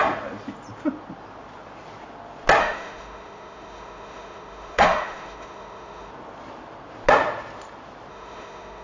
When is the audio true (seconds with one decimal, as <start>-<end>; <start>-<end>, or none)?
0.0-2.6; 6.1-8.1